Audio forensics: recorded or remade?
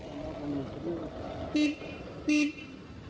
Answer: recorded